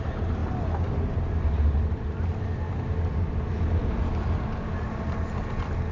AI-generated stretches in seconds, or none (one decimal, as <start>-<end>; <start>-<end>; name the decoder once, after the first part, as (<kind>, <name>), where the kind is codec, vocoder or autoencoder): none